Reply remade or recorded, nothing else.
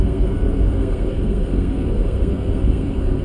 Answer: remade